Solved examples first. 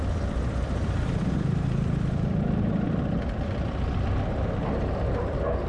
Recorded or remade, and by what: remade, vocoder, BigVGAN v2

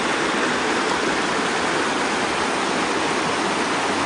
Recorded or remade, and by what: recorded